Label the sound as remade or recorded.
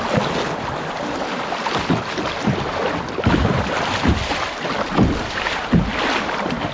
recorded